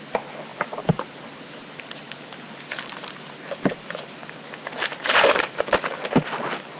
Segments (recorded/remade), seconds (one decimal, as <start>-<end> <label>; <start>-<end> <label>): 0.0-4.2 remade; 4.2-5.3 recorded; 5.3-6.8 remade